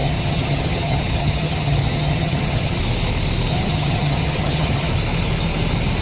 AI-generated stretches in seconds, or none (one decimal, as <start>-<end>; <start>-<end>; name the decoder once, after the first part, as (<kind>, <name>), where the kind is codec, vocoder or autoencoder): 0.0-2.8 (vocoder, HiFi-GAN); 3.5-4.9